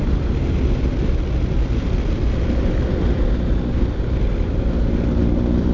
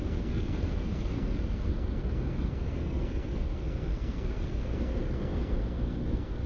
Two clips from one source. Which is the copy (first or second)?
second